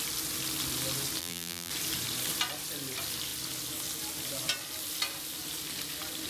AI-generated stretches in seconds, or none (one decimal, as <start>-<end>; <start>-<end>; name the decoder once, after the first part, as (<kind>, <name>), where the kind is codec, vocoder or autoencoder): 1.2-1.7 (vocoder, BigVGAN v2)